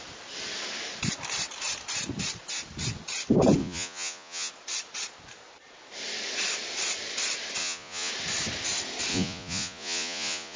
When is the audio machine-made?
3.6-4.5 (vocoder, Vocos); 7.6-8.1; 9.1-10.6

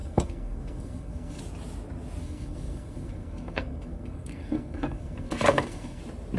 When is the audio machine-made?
0.0-1.4 (codec, SNAC); 2.2-6.0

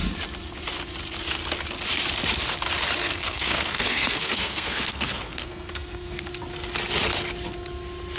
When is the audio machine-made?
3.0-6.3 (codec, SNAC)